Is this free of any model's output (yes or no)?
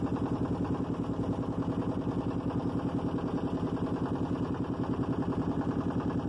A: yes